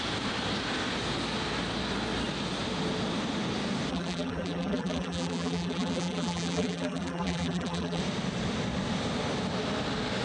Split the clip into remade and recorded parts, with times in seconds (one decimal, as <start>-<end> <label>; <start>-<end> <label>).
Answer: 0.0-3.9 recorded; 3.9-8.0 remade; 8.0-10.2 recorded